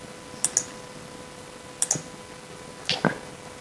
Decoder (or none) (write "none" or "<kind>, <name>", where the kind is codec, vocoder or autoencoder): none